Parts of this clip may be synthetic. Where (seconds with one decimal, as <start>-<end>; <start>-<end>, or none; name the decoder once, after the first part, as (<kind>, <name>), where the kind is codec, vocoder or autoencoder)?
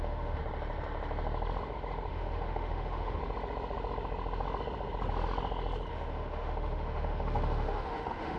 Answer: 0.0-0.4 (autoencoder, DAC-VAE); 2.1-3.2; 5.9-8.4